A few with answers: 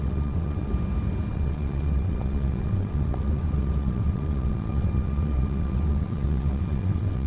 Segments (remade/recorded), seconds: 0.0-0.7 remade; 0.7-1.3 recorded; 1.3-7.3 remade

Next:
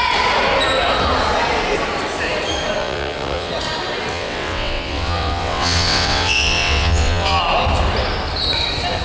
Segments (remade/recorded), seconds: 0.0-2.8 recorded; 2.8-3.5 remade; 3.5-4.1 recorded; 4.1-7.4 remade; 7.4-9.0 recorded

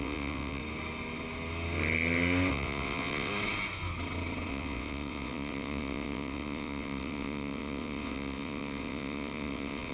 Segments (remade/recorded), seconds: 0.0-0.6 remade; 0.6-2.5 recorded; 2.5-3.3 remade; 3.3-4.5 recorded; 4.5-9.9 remade

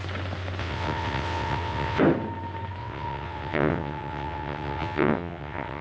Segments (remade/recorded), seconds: 0.0-0.6 recorded; 0.6-2.0 remade; 2.0-2.8 recorded; 2.8-5.8 remade

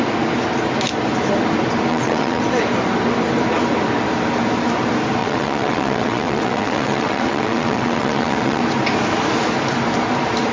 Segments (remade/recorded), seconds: 0.0-1.9 recorded; 1.9-2.4 remade; 2.4-5.2 recorded; 5.2-8.6 remade; 8.6-10.5 recorded

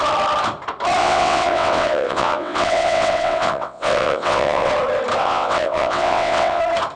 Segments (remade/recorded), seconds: 0.0-1.0 recorded; 1.0-4.7 remade; 4.7-5.2 recorded; 5.2-6.6 remade; 6.6-7.0 recorded

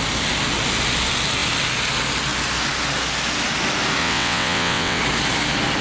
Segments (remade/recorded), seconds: 0.0-4.0 recorded; 4.0-5.0 remade; 5.0-5.8 recorded

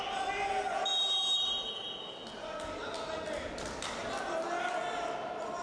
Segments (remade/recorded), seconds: 0.0-5.6 recorded